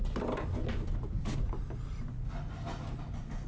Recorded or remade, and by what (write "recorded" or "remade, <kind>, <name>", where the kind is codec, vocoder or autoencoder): recorded